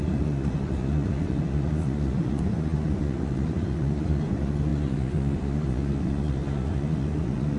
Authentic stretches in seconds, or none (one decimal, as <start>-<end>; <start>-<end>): none